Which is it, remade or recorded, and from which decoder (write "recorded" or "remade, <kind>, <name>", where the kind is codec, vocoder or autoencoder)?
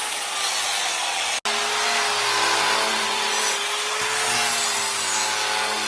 recorded